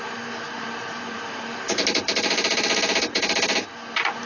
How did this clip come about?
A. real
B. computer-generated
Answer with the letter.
B